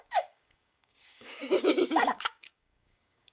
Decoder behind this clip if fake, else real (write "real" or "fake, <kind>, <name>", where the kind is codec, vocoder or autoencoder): fake, codec, DAC